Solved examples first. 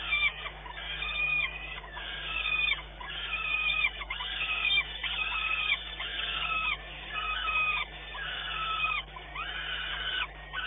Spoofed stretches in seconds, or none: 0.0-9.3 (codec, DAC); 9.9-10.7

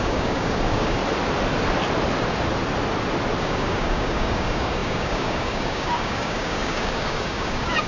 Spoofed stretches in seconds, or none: 0.0-1.0 (codec, DAC); 3.4-7.9

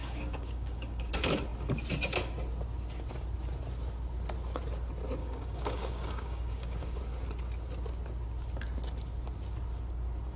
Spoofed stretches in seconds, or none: 0.0-1.1 (codec, DAC); 5.2-7.0

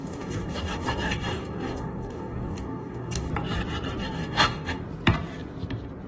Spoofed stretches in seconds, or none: 0.0-3.3 (codec, DAC); 4.0-4.8

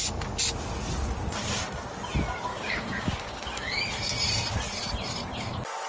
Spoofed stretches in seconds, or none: 2.5-3.8 (codec, DAC)

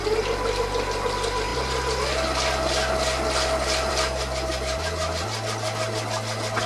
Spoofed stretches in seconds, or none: none

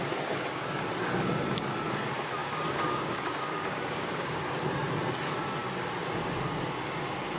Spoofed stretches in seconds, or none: 2.4-4.4 (codec, DAC)